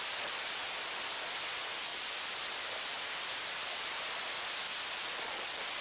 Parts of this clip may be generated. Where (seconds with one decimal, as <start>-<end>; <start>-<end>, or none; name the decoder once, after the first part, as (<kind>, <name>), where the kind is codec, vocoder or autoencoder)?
1.9-4.6 (vocoder, BigVGAN v2)